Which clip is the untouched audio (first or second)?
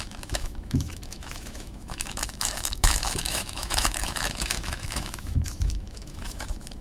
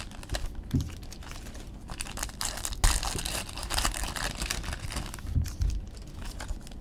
second